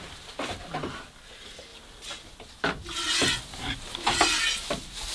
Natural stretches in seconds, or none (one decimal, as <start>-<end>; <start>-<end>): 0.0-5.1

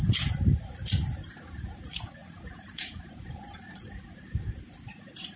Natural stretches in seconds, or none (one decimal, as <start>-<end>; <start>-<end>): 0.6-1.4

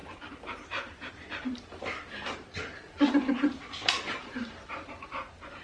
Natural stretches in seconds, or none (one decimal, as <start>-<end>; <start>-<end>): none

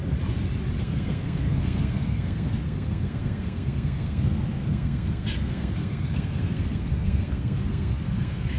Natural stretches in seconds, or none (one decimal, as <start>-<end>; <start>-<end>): 0.0-0.8

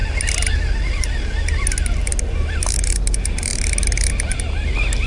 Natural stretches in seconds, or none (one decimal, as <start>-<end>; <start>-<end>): 0.0-5.1